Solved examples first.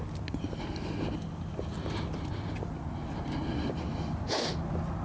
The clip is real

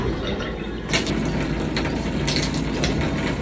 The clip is real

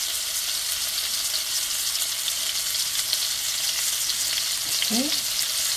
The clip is real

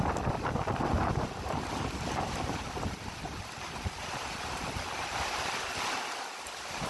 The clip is real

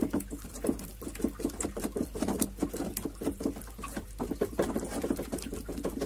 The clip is real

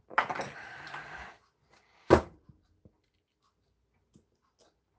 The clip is real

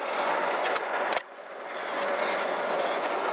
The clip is fake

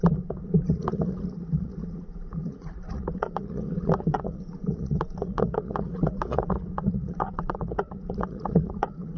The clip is fake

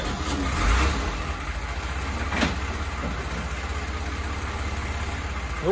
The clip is real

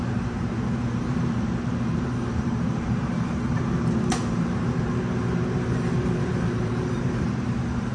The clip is fake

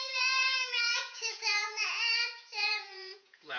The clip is fake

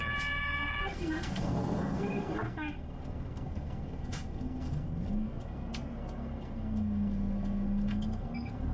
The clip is fake